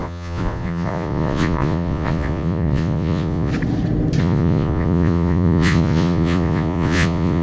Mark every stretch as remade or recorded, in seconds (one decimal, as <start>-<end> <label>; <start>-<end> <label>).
0.0-3.5 remade; 3.5-4.2 recorded; 4.2-7.4 remade